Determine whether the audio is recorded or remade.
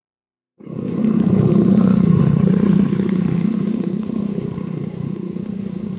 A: remade